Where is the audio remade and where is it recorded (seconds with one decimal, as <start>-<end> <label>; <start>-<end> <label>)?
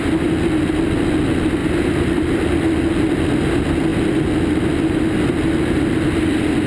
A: 0.0-6.7 recorded